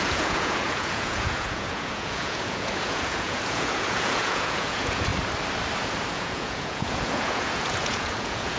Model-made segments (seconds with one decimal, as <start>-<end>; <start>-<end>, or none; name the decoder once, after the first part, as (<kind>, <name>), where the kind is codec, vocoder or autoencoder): 0.0-5.1 (vocoder, Vocos); 6.1-8.6